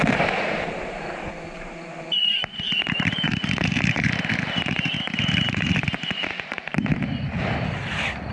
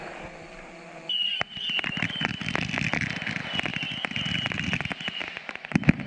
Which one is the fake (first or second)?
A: first